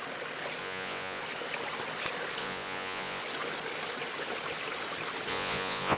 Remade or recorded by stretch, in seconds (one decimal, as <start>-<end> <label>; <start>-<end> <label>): 0.0-0.6 recorded; 0.6-1.2 remade; 1.2-2.4 recorded; 2.4-3.2 remade; 3.2-5.3 recorded; 5.3-6.0 remade